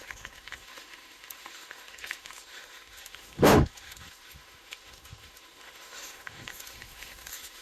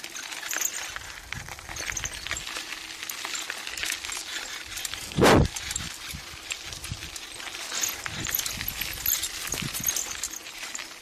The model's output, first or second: first